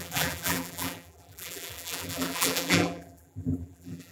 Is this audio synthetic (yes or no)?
yes